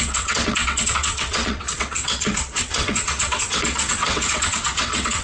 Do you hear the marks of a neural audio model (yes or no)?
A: yes